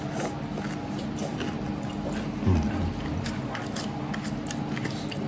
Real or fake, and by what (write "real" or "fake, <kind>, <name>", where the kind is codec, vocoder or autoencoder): real